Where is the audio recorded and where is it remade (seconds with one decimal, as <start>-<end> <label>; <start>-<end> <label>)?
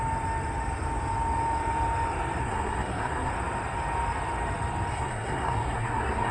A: 0.0-2.4 recorded; 2.4-3.3 remade; 3.3-4.9 recorded; 4.9-6.3 remade